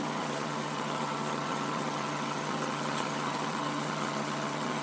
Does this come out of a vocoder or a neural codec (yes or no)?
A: yes